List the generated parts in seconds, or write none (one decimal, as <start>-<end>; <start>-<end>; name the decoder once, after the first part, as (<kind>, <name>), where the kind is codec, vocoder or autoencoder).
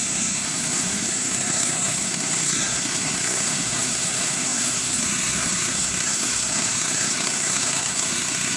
0.0-8.6 (codec, SNAC)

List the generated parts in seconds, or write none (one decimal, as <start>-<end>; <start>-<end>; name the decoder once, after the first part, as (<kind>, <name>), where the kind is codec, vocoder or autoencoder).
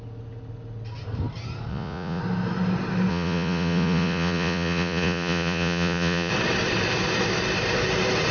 1.7-2.2 (vocoder, Vocos); 3.1-6.3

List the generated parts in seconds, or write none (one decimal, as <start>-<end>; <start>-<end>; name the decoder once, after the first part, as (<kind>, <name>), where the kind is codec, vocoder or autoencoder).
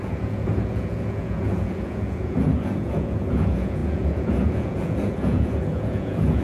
0.0-6.4 (vocoder, Vocos)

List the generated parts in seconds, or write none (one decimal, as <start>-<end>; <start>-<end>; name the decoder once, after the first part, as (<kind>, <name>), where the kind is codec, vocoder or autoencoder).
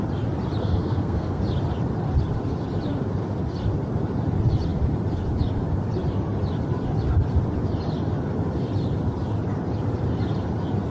0.6-1.4 (codec, SNAC)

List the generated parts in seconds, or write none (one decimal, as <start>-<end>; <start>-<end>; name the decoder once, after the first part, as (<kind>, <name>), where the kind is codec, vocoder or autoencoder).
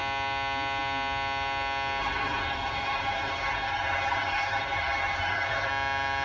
2.0-5.7 (codec, SNAC)